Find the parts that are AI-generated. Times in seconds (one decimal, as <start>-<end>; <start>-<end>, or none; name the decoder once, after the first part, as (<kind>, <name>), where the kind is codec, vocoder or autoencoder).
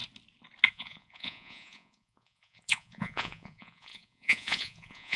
0.7-5.2 (vocoder, Vocos)